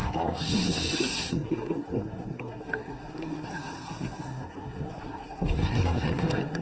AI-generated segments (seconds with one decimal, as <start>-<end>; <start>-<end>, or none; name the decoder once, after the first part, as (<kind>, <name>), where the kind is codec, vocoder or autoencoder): 0.0-6.6 (codec, SNAC)